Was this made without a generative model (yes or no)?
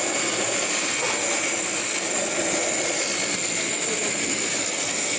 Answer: yes